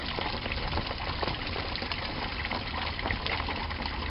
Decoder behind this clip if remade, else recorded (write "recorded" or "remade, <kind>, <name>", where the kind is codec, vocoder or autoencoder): recorded